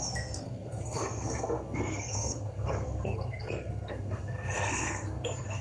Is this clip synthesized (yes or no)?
yes